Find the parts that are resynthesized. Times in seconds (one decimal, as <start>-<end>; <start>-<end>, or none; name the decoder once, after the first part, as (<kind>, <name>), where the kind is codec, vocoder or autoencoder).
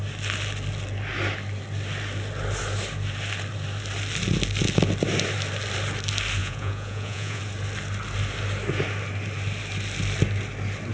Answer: 6.4-7.4 (vocoder, Vocos)